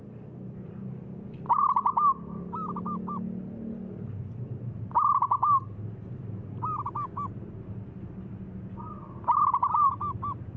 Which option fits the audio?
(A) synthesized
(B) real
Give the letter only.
B